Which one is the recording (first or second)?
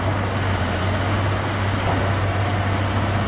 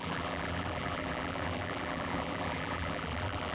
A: first